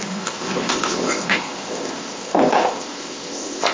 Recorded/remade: remade